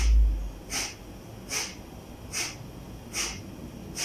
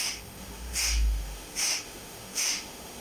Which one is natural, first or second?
first